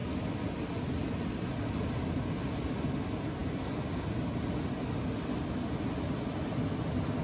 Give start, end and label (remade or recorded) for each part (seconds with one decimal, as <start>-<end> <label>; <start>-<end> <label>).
0.0-7.2 recorded

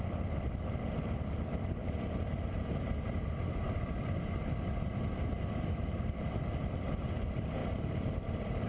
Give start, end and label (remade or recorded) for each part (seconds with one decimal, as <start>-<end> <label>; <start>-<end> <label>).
0.0-1.8 recorded; 1.8-6.6 remade; 6.6-7.6 recorded; 7.6-8.7 remade

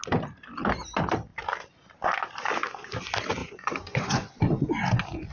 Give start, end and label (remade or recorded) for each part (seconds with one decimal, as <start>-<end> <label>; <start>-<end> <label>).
0.0-3.4 recorded; 3.4-4.8 remade; 4.8-5.3 recorded

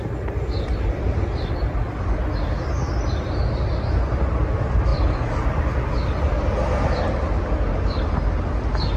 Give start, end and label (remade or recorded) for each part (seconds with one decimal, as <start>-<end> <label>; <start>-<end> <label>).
0.0-9.0 recorded